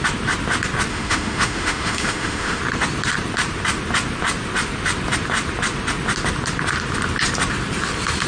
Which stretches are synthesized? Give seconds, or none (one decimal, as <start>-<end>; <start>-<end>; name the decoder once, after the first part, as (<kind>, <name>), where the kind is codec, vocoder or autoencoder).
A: 0.9-2.6 (autoencoder, DAC-VAE)